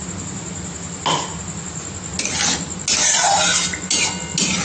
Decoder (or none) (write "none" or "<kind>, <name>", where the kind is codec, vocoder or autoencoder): none